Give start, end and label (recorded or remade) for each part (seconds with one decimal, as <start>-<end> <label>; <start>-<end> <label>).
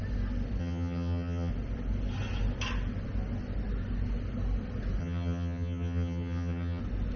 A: 0.0-0.6 recorded; 0.6-1.5 remade; 1.5-5.0 recorded; 5.0-6.8 remade; 6.8-7.2 recorded